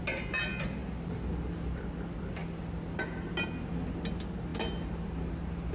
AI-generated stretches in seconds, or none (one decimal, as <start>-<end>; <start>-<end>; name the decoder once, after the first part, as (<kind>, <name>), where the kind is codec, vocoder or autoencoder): none